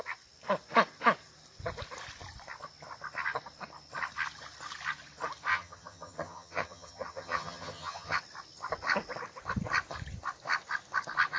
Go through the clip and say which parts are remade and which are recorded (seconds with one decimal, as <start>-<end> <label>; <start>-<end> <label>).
0.0-5.5 recorded; 5.5-8.2 remade; 8.2-11.4 recorded